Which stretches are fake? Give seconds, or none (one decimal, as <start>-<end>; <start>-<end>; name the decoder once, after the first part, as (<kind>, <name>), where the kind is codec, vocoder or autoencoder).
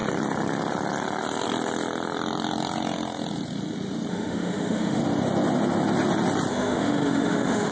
4.1-5.0 (autoencoder, DAC-VAE); 6.5-7.7